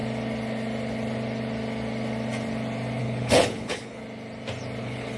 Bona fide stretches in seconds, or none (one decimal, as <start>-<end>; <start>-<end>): 0.0-3.0; 4.0-4.8